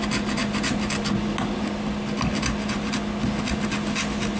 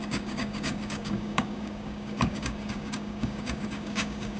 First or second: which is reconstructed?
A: second